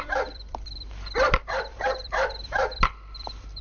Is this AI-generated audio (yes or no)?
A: yes